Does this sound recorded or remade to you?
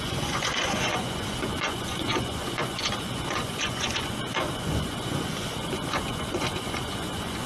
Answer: remade